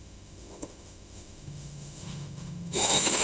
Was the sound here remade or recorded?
remade